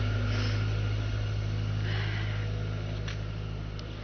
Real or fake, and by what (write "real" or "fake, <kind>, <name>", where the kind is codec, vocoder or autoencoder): real